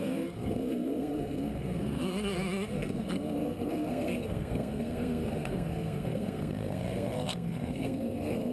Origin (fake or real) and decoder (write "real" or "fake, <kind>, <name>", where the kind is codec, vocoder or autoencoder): fake, codec, SNAC